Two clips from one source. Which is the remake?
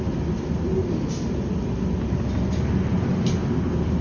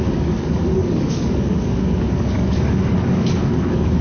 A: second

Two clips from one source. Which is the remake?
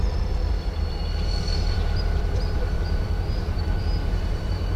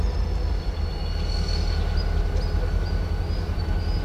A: first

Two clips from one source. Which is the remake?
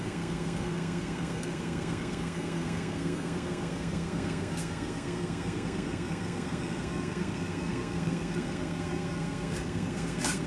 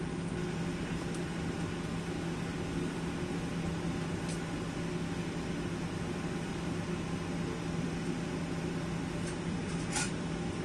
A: first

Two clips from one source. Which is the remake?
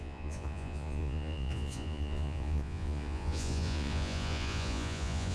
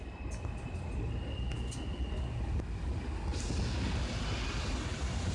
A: first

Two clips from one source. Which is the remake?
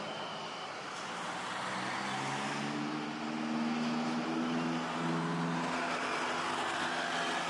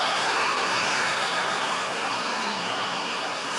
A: second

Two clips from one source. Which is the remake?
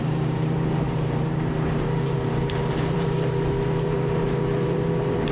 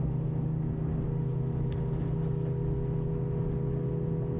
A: first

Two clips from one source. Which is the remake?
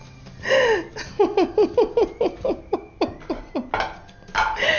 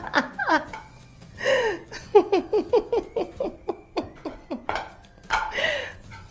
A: second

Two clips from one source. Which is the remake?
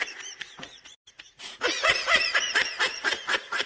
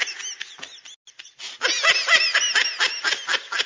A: first